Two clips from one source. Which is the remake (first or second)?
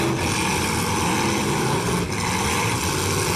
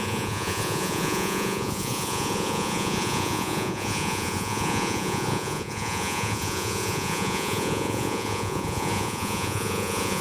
second